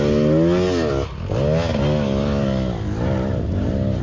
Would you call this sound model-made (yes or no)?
no